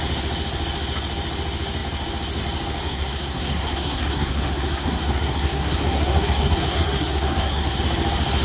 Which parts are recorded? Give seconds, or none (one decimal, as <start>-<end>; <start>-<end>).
0.0-2.8; 7.8-8.4